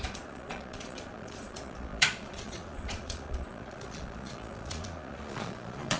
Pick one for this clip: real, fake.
fake